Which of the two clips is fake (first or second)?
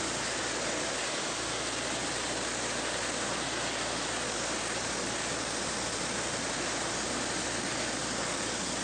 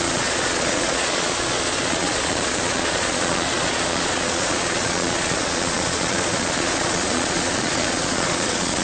second